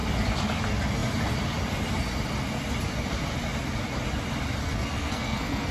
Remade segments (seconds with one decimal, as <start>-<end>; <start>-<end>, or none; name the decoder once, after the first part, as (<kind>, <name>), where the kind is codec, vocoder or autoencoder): 4.6-5.7 (codec, SNAC)